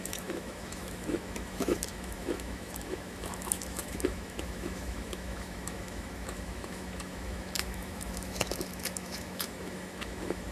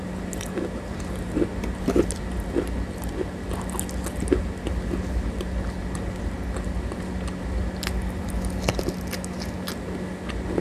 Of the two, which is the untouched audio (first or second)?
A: second